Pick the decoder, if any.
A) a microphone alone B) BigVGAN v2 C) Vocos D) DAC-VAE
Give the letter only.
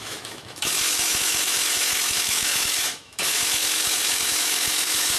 D